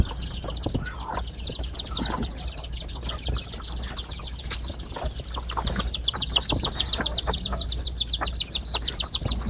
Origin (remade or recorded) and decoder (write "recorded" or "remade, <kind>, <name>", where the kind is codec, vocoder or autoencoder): recorded